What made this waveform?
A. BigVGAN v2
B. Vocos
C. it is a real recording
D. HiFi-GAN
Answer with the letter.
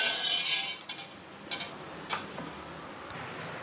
C